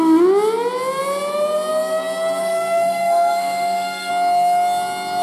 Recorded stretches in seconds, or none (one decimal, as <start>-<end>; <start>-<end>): 0.0-2.4; 4.1-5.2